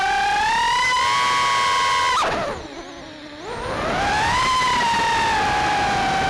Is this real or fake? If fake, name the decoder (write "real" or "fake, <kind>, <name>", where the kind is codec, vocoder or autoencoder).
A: real